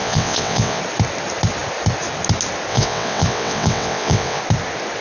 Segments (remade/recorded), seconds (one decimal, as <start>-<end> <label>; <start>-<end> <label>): 0.0-0.8 remade; 0.8-2.7 recorded; 2.7-4.4 remade; 4.4-5.0 recorded